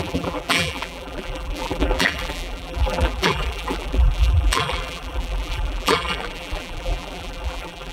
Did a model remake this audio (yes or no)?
yes